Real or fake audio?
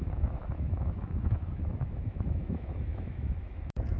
fake